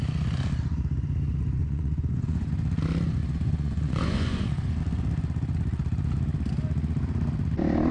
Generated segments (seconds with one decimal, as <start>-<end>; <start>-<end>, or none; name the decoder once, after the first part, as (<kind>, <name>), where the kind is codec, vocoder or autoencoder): 1.6-2.5 (vocoder, Vocos); 3.2-4.8